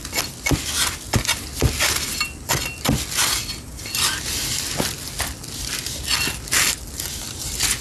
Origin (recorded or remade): recorded